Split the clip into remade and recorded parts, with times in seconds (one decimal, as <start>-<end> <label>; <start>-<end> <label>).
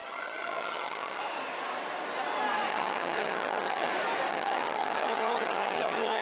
0.0-1.2 remade; 1.2-2.7 recorded; 2.7-3.9 remade; 3.9-4.3 recorded; 4.3-6.2 remade